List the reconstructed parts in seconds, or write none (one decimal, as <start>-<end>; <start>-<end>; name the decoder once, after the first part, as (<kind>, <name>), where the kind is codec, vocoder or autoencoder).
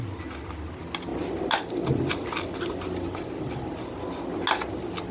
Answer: none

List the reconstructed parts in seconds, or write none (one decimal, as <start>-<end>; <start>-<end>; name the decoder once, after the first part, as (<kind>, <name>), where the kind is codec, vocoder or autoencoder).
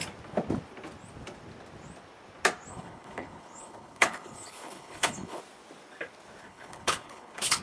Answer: 2.7-5.4 (codec, HILCodec); 6.4-7.6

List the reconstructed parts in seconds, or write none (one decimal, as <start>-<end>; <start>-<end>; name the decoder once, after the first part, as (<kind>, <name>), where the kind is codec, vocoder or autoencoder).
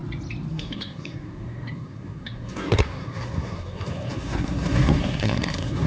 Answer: 0.5-5.9 (codec, SNAC)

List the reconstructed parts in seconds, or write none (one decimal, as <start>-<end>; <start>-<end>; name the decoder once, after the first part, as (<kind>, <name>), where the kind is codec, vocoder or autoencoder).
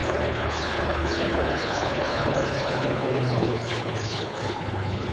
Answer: 0.0-5.1 (codec, HILCodec)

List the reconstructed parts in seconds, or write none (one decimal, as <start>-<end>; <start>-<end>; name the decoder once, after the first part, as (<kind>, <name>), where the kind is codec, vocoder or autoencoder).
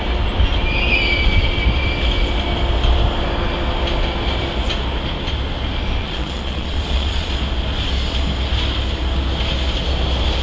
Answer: 6.0-7.3 (vocoder, Vocos)